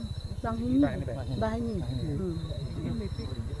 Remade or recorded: recorded